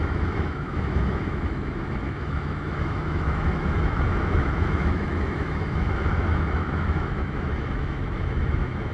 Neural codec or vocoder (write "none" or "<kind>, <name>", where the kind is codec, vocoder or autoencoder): autoencoder, DAC-VAE